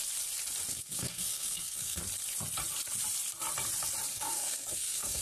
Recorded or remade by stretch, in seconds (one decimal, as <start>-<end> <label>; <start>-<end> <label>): 0.0-0.7 recorded; 0.7-2.0 remade; 2.0-4.1 recorded; 4.1-5.2 remade